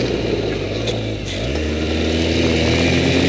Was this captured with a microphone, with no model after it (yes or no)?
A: yes